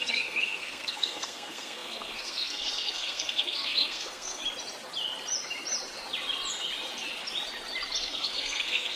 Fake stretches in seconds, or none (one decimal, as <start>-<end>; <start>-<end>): 0.0-4.4; 8.0-9.0